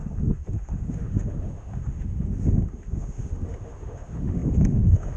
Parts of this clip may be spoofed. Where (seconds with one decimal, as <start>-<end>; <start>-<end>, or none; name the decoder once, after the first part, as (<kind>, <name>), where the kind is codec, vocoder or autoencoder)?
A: 0.0-5.2 (autoencoder, DAC-VAE)